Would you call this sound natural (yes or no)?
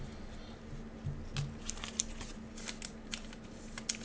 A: yes